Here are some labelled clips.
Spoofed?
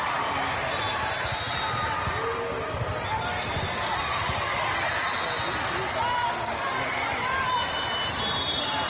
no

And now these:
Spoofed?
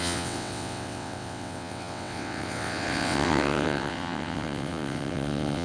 yes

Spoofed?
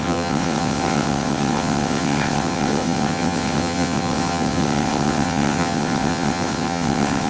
yes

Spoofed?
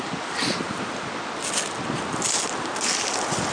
no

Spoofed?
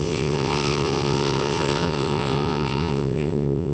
yes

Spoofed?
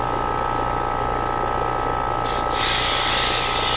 no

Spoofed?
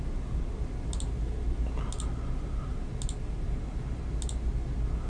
no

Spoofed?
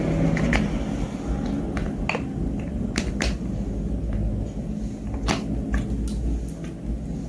no